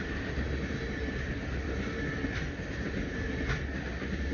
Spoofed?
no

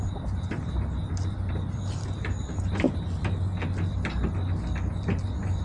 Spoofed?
no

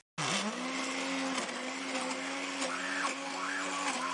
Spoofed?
no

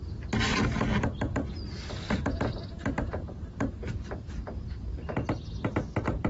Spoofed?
no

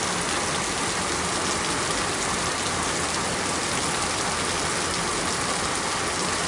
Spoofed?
no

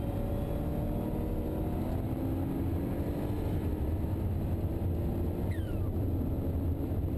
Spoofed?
no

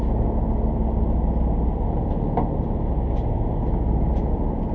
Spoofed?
no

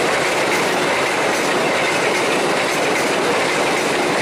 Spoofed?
no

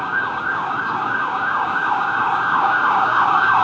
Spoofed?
yes